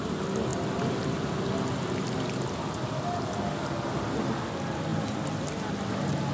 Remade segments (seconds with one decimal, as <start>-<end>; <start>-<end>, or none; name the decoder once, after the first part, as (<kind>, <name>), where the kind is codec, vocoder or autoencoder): none